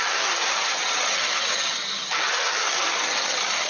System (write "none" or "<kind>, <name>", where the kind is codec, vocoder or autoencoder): vocoder, HiFi-GAN